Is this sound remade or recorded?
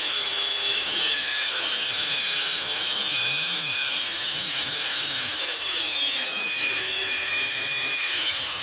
remade